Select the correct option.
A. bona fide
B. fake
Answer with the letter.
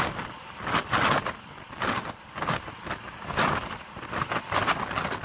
A